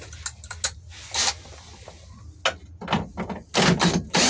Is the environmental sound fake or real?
real